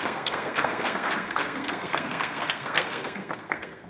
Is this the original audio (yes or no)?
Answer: no